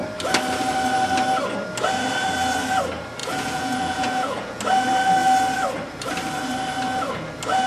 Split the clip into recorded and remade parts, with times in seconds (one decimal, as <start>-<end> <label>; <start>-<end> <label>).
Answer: 0.0-3.2 recorded; 3.2-4.6 remade; 4.6-7.7 recorded